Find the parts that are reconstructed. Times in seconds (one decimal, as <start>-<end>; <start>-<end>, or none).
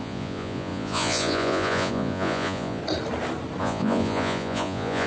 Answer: 0.0-2.8; 3.6-5.1